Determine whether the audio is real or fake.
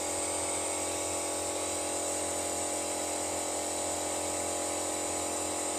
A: real